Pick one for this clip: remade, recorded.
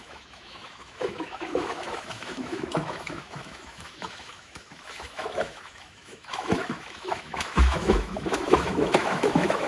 remade